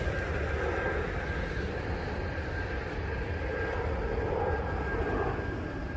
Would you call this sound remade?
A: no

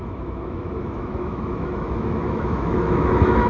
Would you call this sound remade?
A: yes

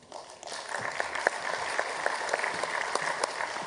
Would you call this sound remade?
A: no